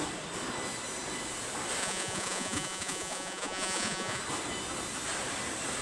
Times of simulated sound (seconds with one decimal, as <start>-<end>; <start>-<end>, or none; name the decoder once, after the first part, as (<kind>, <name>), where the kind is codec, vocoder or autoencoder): 1.8-4.2 (vocoder, Vocos)